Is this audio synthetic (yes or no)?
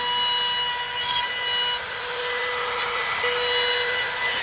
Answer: no